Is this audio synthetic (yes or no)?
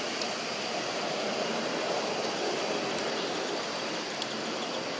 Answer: no